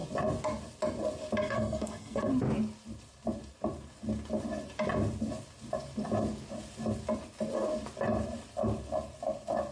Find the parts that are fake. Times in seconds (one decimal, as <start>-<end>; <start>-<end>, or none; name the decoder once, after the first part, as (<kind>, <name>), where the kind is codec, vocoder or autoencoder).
1.4-2.3 (codec, SNAC)